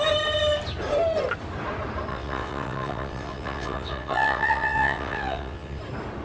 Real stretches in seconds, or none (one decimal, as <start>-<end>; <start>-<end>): 0.0-2.1; 5.8-6.2